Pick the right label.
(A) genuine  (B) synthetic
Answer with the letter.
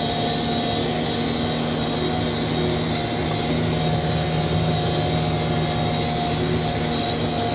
A